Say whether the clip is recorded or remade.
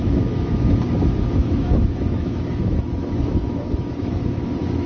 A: remade